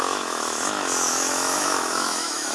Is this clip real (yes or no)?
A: no